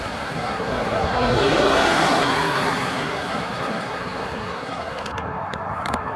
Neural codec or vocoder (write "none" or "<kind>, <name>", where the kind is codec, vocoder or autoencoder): codec, SNAC